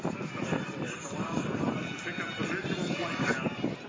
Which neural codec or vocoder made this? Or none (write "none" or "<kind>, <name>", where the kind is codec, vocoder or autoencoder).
none